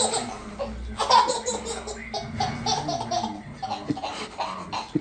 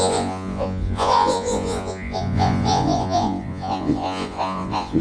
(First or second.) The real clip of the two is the first